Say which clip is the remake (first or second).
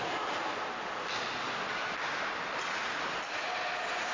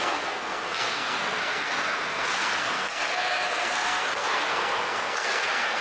second